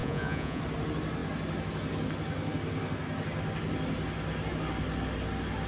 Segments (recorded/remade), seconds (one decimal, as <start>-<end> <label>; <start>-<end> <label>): 0.0-0.6 remade; 0.6-5.7 recorded